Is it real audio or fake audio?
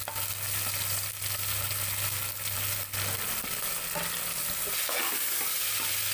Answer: real